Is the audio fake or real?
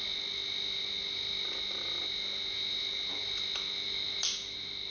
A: real